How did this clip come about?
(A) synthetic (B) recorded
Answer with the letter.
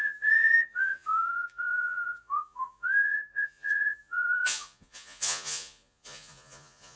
A